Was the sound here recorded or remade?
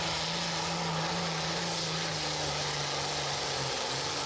recorded